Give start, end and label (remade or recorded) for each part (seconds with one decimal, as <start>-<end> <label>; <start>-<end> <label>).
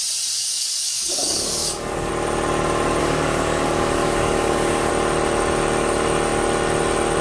0.0-0.4 recorded; 0.4-2.1 remade; 2.1-3.0 recorded; 3.0-4.9 remade; 4.9-7.2 recorded